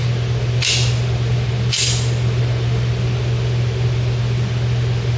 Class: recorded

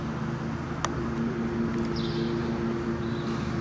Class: recorded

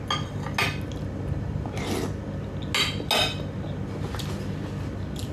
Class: recorded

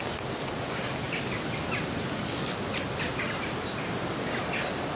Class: recorded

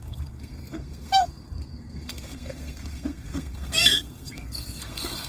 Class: remade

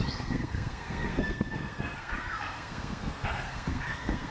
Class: remade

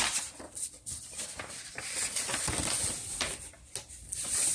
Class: recorded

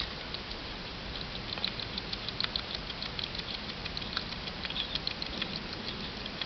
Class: recorded